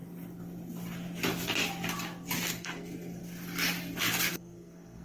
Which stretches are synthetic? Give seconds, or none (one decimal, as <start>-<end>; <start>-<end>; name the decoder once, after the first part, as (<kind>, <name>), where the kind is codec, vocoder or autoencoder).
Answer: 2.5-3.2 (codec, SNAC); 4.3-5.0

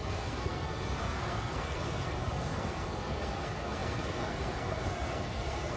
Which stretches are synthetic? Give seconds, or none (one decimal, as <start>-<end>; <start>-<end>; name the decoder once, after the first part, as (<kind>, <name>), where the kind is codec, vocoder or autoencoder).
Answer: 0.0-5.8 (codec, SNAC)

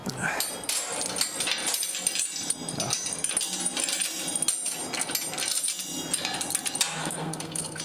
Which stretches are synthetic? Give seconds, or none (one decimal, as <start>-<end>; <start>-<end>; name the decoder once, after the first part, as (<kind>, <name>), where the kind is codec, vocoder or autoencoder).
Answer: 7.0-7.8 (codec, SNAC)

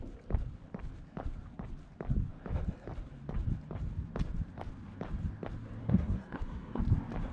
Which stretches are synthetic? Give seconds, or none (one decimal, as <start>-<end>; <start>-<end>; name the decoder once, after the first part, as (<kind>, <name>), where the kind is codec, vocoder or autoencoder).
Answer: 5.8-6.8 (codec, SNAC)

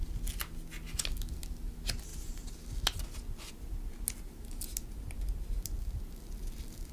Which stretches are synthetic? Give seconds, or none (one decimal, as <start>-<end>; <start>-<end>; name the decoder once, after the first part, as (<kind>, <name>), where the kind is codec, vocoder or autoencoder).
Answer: none

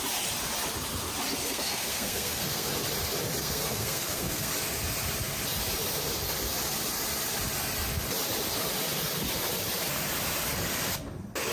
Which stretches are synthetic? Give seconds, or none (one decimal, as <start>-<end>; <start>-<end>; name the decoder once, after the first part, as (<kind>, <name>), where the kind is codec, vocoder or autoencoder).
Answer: 1.4-2.7 (codec, SNAC); 3.4-4.5

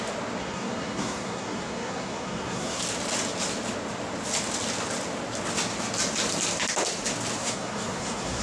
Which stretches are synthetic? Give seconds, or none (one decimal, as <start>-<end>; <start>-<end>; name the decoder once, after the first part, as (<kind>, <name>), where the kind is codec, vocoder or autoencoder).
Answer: 0.4-2.8 (codec, SNAC); 7.4-8.4